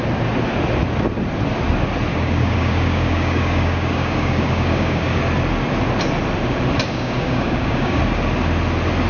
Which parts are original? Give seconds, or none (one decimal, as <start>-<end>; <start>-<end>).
0.0-2.1; 5.2-6.9; 8.0-9.1